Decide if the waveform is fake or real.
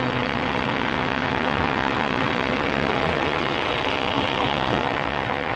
fake